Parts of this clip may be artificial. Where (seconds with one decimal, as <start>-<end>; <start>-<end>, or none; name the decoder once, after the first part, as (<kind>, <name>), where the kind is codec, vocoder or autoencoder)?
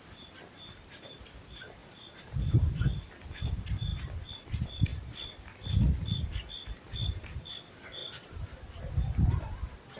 0.0-3.9 (vocoder, BigVGAN v2); 4.4-4.9; 7.2-10.0